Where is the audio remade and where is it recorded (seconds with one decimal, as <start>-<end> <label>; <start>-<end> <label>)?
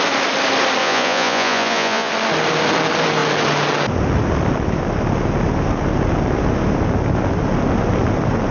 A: 0.0-0.8 recorded; 0.8-2.1 remade; 2.1-8.5 recorded